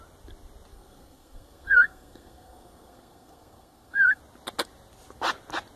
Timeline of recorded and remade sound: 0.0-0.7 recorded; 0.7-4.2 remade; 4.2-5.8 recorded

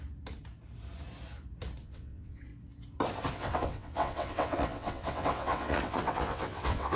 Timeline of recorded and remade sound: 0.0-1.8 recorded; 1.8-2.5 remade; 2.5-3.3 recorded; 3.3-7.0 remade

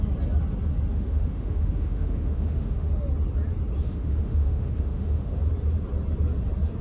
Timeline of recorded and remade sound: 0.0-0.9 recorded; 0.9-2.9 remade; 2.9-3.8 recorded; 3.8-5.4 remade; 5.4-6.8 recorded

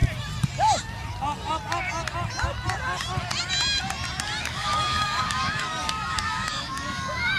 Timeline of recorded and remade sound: 0.0-4.4 recorded; 4.4-7.4 remade